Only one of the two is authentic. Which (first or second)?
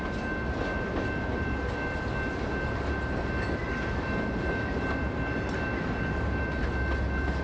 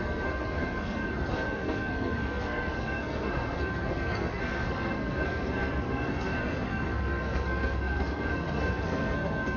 first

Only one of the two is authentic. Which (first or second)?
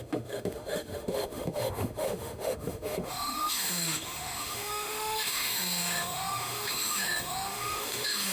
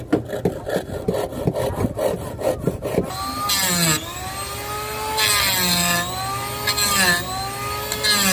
second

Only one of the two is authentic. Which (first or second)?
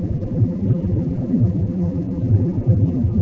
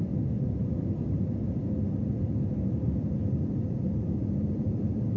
second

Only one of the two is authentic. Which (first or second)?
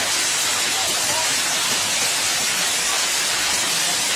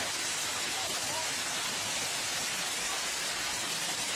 first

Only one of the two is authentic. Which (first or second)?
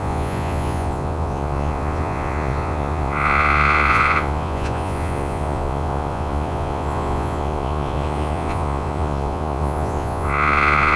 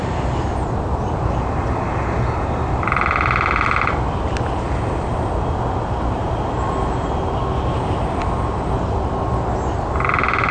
second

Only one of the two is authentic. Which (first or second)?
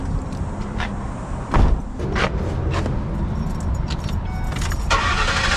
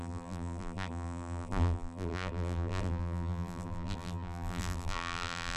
first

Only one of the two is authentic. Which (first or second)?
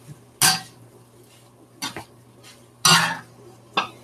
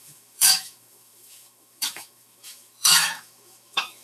first